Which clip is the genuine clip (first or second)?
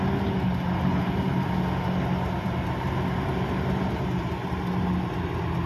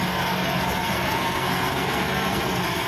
first